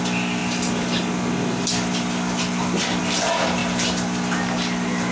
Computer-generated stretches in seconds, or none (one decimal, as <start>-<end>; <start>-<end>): none